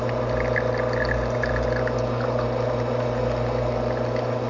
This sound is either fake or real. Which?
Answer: real